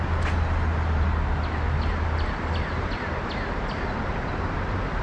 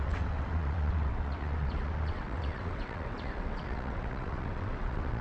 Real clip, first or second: first